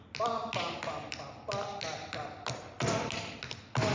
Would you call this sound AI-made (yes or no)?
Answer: no